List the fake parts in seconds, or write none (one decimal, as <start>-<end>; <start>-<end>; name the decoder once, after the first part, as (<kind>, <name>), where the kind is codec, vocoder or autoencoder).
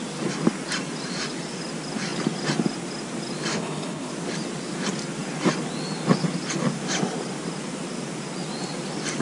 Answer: 3.5-4.1 (codec, HILCodec)